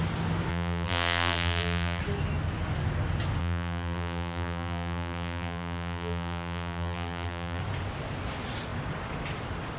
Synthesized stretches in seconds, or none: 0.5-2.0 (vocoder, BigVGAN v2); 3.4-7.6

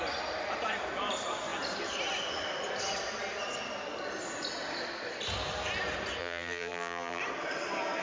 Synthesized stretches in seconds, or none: 6.2-7.2 (vocoder, BigVGAN v2)

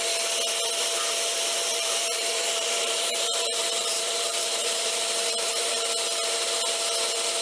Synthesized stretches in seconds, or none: 1.3-5.7 (vocoder, BigVGAN v2)

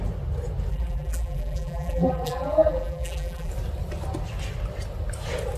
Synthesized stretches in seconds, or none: 0.7-3.5 (vocoder, BigVGAN v2)